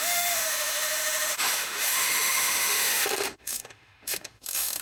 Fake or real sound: fake